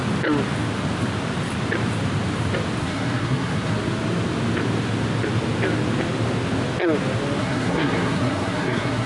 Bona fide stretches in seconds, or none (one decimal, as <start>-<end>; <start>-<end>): 0.0-2.8; 3.7-7.4